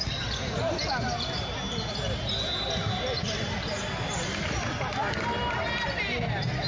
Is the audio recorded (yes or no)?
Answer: yes